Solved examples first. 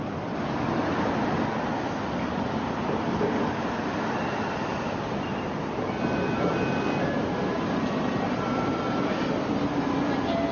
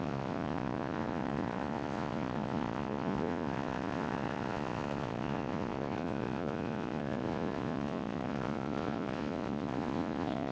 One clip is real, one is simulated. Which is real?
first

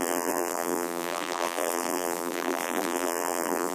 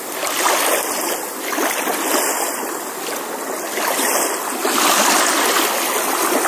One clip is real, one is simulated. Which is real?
second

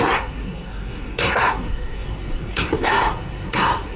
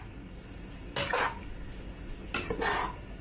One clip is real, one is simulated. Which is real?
second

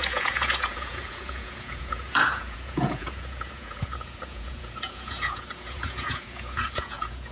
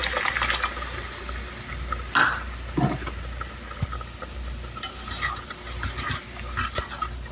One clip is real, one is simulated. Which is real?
second